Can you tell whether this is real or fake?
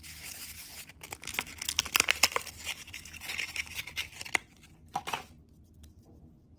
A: real